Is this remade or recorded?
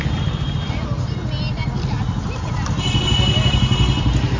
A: remade